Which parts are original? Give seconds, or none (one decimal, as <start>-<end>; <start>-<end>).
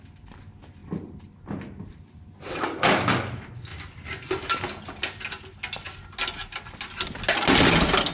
0.0-8.1